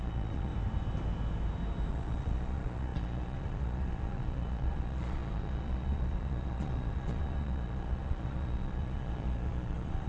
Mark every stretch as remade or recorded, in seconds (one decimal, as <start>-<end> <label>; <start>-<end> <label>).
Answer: 0.0-0.5 remade; 0.5-1.9 recorded; 1.9-10.1 remade